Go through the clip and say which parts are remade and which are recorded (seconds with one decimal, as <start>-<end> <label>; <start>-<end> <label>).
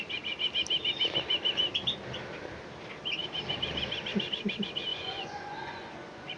0.0-4.9 recorded; 4.9-6.4 remade